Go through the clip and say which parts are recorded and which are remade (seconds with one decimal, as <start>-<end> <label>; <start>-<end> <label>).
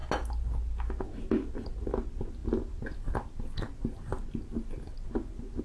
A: 0.0-5.6 recorded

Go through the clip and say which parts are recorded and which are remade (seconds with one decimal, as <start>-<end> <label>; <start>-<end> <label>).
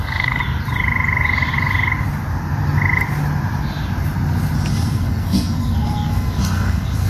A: 0.0-0.4 remade; 0.4-4.7 recorded; 4.7-7.1 remade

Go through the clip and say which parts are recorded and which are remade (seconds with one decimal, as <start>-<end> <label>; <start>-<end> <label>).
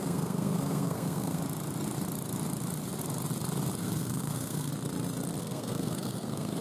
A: 0.0-1.4 remade; 1.4-3.8 recorded; 3.8-4.7 remade; 4.7-5.4 recorded; 5.4-6.6 remade